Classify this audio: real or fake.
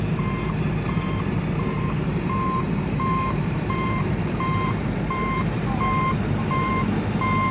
fake